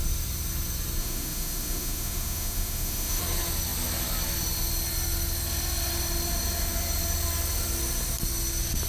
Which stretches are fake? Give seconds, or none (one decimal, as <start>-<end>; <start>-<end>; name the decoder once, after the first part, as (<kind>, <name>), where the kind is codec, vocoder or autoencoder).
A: 1.0-3.2 (autoencoder, DAC-VAE)